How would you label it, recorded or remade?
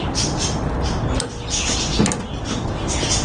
recorded